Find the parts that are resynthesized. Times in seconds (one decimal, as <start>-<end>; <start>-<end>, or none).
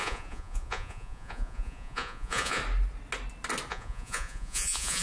0.0-2.6; 3.7-5.0